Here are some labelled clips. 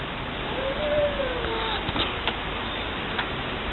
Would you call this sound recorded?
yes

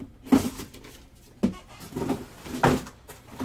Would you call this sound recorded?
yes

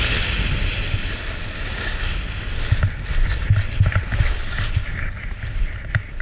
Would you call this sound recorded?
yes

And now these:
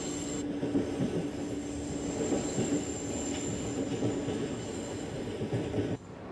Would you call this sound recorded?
yes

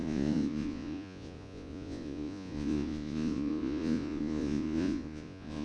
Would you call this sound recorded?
no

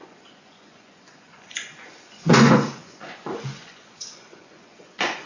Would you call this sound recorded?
no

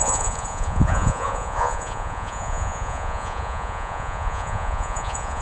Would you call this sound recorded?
no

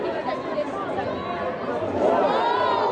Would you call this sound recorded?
yes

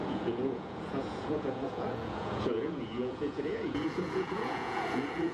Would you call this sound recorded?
no